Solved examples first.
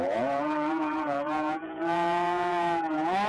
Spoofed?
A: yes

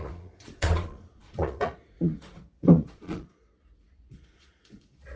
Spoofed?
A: yes